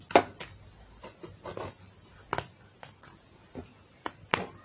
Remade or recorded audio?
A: recorded